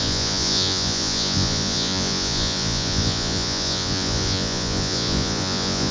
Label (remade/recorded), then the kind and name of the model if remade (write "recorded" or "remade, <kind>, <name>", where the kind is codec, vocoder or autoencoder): remade, vocoder, Vocos